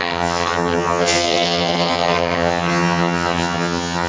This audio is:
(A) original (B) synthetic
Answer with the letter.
B